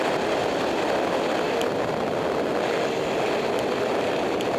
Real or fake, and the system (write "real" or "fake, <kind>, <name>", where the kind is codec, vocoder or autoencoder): real